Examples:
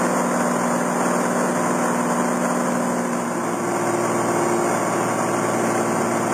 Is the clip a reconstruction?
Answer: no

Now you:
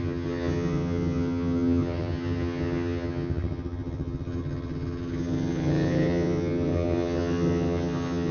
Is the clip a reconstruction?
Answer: yes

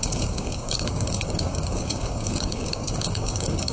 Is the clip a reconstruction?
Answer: yes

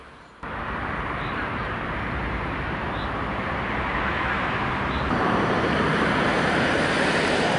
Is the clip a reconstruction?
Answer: yes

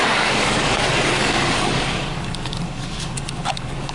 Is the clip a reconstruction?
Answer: yes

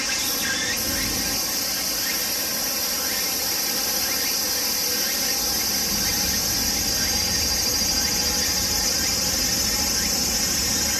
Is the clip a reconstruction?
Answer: no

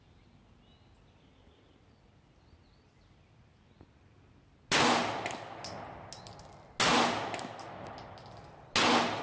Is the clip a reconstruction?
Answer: no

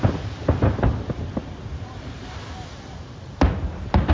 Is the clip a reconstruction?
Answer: no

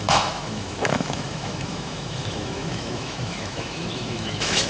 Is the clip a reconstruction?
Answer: yes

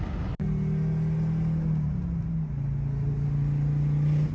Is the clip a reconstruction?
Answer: no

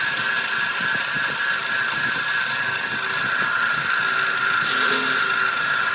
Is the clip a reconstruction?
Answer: no